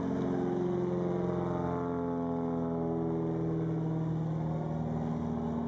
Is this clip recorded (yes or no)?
yes